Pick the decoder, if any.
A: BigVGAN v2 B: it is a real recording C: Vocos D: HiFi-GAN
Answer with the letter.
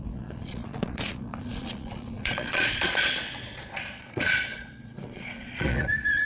C